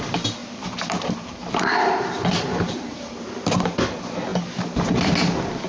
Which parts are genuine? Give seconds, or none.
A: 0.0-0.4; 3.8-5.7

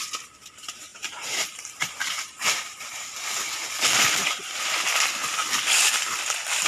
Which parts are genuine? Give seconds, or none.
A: 5.2-6.7